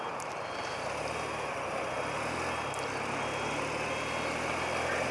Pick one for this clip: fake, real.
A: real